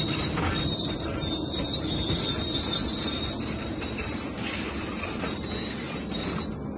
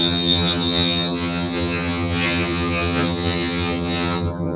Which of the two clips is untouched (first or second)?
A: first